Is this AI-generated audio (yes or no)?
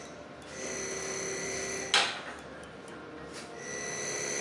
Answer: no